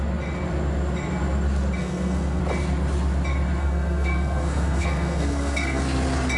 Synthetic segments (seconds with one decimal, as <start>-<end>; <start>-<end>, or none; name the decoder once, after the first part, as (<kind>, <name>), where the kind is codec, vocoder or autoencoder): 1.8-2.4 (codec, SNAC); 3.6-5.8